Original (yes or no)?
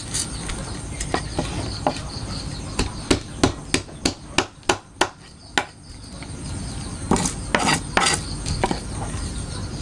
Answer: yes